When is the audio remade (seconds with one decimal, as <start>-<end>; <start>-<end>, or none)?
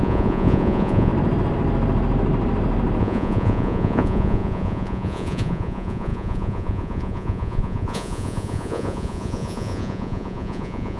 0.0-1.1; 3.0-11.0